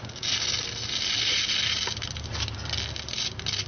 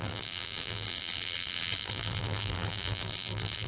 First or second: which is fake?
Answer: second